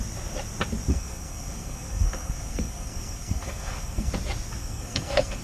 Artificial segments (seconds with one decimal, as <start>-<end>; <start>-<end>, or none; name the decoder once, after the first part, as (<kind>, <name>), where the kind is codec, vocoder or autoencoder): 0.9-4.1 (codec, SNAC); 4.6-5.4